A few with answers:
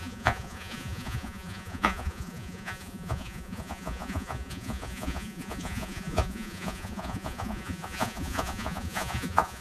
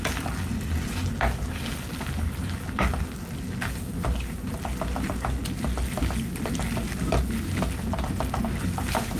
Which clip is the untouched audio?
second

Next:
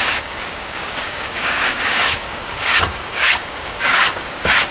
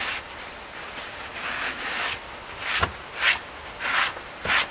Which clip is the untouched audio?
second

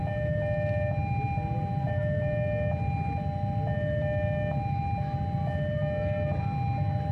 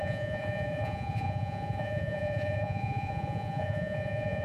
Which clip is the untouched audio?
first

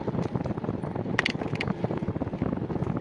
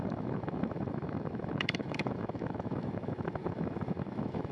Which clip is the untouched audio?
first